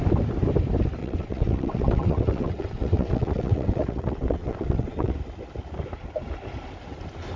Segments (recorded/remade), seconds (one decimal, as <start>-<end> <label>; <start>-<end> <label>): 0.0-1.0 recorded; 1.0-5.2 remade; 5.2-7.4 recorded